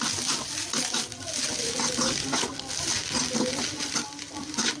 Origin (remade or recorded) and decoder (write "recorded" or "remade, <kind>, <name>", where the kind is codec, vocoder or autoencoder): recorded